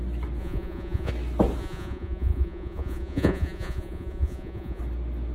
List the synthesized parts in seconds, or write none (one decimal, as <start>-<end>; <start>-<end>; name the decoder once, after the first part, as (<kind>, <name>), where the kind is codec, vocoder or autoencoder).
0.4-1.1 (vocoder, Vocos); 1.6-4.8

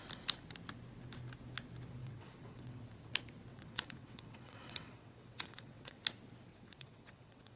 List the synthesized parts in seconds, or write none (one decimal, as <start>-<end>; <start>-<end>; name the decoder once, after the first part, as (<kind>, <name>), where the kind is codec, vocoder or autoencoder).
2.0-2.8 (vocoder, WaveNeXt); 3.5-6.0; 6.5-7.6

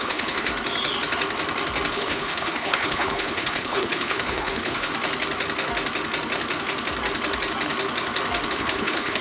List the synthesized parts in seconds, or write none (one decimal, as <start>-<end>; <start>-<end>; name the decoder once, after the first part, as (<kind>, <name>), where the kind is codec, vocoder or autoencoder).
0.0-0.5 (codec, HILCodec); 1.9-4.9; 8.5-9.2

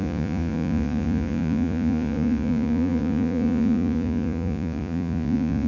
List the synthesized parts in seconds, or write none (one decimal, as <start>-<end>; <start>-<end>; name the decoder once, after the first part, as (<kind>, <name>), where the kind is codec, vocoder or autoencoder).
0.0-5.7 (vocoder, Vocos)

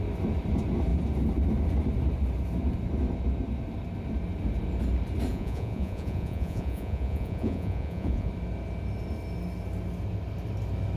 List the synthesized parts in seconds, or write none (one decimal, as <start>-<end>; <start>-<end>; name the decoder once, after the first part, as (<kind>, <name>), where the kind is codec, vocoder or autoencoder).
5.3-8.3 (vocoder, Vocos)

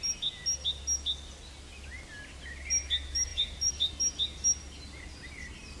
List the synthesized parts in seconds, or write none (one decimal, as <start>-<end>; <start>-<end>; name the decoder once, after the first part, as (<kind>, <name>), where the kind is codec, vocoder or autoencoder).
3.3-3.9 (vocoder, BigVGAN v2)

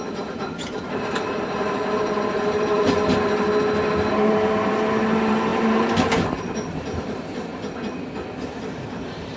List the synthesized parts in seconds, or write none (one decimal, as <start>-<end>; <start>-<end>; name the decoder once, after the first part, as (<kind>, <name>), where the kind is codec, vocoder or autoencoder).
0.0-3.3 (vocoder, BigVGAN v2); 4.1-7.5; 8.6-9.4